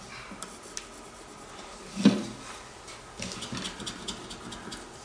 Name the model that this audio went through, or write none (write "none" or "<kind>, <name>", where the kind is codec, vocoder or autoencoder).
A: none